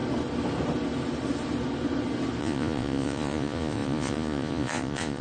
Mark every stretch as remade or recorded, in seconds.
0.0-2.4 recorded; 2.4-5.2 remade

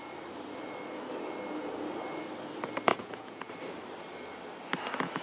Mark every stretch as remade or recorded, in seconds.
0.0-2.9 recorded; 2.9-3.5 remade; 3.5-5.2 recorded